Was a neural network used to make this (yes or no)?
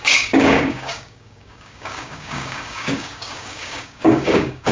yes